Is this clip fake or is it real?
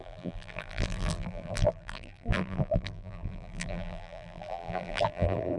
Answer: fake